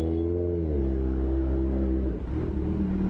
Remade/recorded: recorded